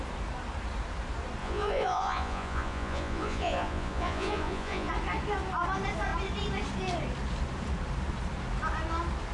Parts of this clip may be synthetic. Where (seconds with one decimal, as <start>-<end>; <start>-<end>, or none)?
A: 1.4-4.9